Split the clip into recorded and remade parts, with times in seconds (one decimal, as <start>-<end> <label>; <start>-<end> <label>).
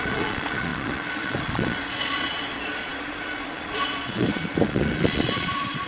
0.0-5.9 remade